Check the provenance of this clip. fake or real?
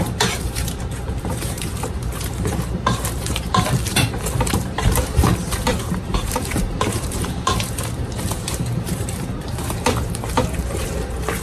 fake